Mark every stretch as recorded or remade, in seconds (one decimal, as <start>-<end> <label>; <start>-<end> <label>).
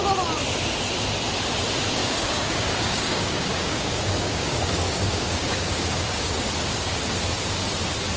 0.0-2.0 recorded; 2.0-6.5 remade; 6.5-8.2 recorded